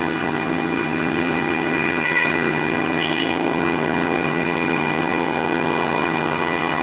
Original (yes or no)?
no